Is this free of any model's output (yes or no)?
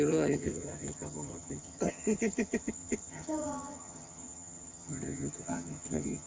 no